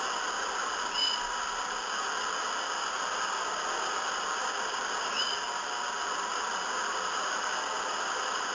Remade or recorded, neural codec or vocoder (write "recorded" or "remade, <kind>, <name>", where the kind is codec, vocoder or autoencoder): recorded